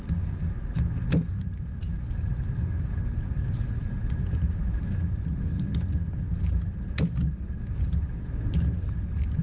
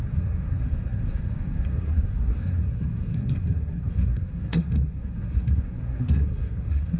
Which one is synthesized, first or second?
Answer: second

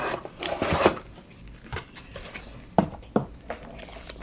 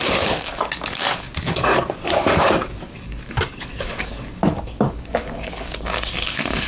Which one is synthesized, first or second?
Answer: second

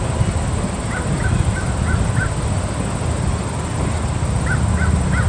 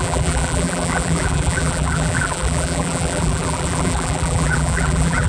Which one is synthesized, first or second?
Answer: second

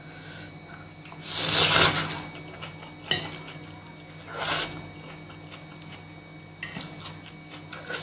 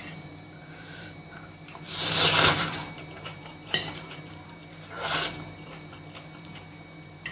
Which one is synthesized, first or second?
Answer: second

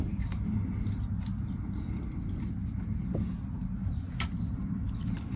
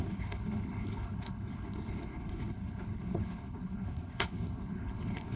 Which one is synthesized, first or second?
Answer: second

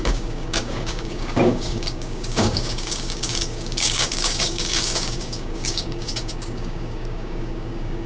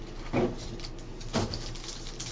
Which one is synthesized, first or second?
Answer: first